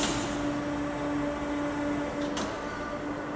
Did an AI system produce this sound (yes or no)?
no